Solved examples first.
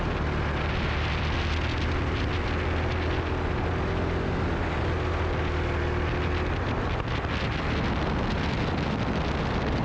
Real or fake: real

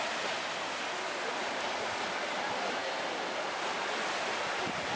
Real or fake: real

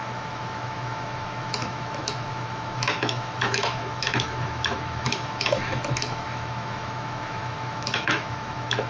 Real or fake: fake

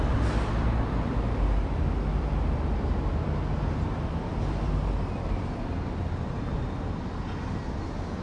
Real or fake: real